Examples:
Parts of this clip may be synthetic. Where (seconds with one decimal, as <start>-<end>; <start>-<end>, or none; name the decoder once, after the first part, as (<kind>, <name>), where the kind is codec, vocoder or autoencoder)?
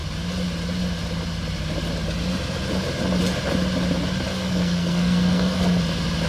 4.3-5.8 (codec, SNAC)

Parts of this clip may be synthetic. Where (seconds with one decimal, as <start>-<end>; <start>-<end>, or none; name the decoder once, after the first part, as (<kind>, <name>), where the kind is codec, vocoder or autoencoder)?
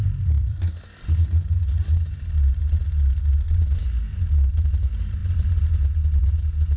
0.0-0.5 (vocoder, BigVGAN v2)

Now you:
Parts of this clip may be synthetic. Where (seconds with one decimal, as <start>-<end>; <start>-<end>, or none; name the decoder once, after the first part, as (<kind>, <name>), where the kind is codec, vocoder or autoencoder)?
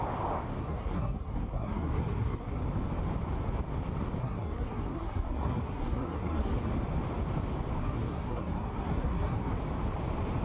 0.6-2.6 (codec, SNAC); 4.2-6.7; 7.8-9.5